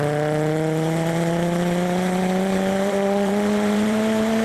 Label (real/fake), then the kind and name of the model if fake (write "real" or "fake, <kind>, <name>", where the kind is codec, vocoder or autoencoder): fake, vocoder, BigVGAN v2